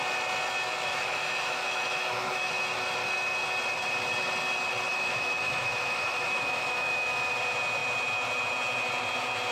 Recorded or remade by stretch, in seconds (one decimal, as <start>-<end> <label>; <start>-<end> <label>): 0.0-0.9 recorded; 0.9-2.5 remade; 2.5-4.9 recorded; 4.9-7.3 remade; 7.3-9.5 recorded